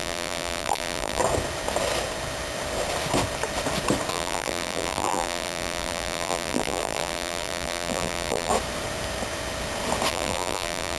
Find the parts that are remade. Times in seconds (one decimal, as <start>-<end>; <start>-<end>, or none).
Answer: 0.0-1.2; 4.1-8.5; 10.1-11.0